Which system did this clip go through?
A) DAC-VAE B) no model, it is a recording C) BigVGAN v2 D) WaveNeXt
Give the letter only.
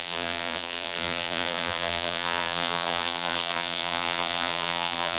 C